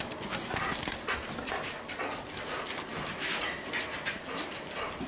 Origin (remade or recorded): recorded